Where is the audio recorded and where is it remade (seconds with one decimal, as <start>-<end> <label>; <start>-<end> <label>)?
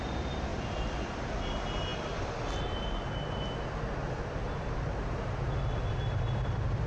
0.0-0.5 recorded; 0.5-1.3 remade; 1.3-6.9 recorded